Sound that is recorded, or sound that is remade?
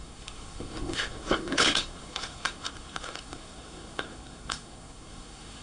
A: remade